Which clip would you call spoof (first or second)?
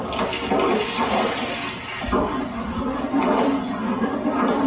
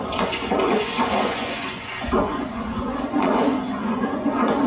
second